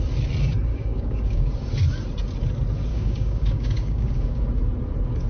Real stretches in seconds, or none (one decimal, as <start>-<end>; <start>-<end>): 0.0-0.7; 1.5-2.9; 4.4-5.3